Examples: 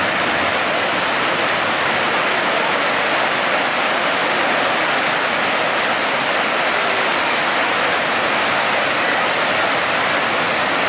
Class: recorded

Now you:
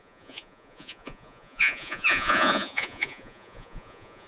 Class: remade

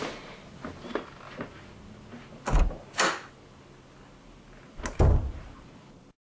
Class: recorded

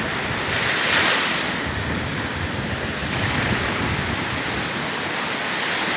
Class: recorded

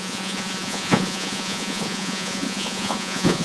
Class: remade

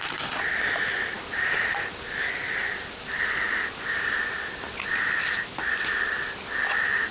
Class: recorded